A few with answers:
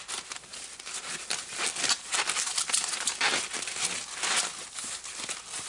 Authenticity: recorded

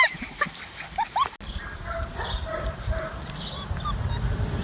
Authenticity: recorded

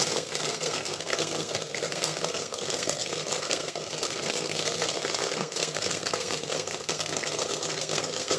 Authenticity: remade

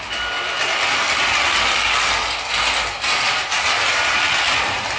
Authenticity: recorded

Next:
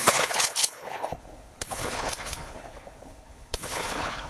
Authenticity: remade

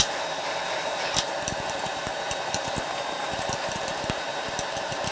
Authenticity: remade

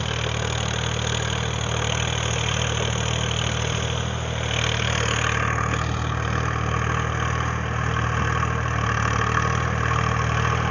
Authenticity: recorded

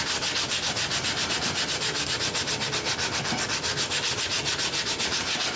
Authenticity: recorded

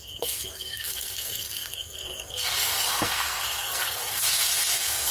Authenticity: remade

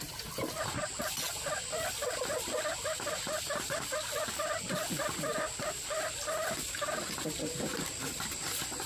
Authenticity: recorded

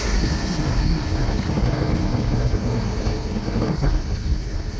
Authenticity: remade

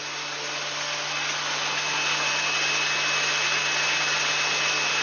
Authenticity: recorded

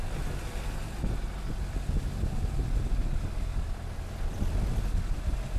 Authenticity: recorded